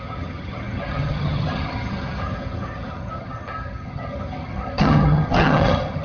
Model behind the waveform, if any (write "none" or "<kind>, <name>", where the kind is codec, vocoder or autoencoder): vocoder, HiFi-GAN